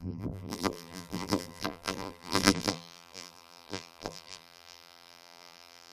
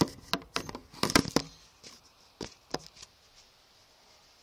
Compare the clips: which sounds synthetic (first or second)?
first